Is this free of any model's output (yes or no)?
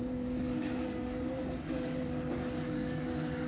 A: no